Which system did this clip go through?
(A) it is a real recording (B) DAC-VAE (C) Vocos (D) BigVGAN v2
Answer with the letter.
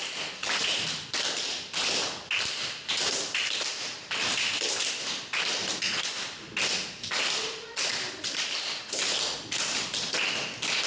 A